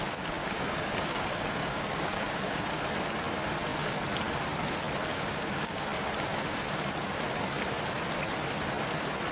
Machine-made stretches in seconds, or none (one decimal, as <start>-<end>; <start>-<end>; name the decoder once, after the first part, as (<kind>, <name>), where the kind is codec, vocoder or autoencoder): 0.4-2.8 (codec, DAC); 5.1-5.8